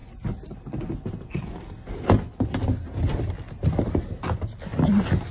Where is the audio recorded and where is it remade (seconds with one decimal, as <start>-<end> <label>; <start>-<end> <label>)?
0.0-4.7 recorded; 4.7-5.3 remade

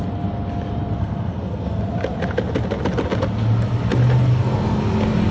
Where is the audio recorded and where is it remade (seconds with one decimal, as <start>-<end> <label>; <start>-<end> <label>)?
0.0-1.0 recorded; 1.0-1.8 remade; 1.8-4.3 recorded; 4.3-4.8 remade; 4.8-5.3 recorded

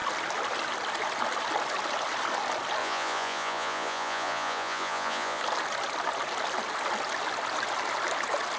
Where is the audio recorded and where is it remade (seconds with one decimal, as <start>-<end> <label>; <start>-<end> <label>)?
0.0-2.8 recorded; 2.8-5.4 remade; 5.4-8.6 recorded

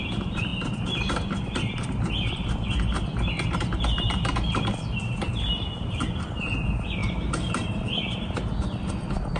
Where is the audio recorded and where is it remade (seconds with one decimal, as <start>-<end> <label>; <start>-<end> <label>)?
0.0-9.4 recorded